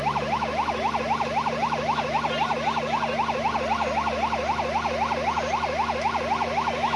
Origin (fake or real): real